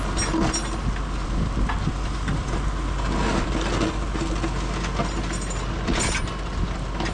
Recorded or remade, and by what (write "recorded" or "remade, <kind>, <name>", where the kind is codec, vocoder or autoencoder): recorded